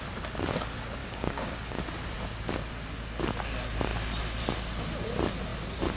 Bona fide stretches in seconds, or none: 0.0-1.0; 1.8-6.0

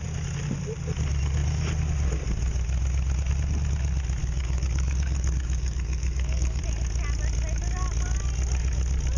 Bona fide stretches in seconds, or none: 0.0-4.2; 6.6-9.2

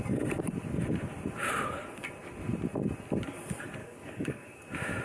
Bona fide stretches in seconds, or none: 0.0-3.8; 4.6-5.0